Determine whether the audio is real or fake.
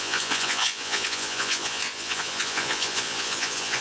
fake